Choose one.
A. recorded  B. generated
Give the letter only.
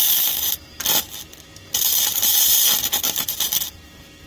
A